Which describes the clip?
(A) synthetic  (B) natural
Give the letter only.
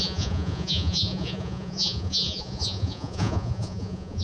A